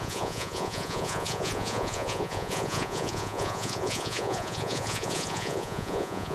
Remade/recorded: remade